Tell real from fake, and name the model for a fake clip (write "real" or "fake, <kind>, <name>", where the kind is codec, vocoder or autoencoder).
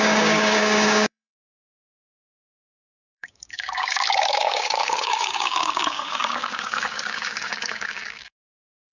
fake, codec, DAC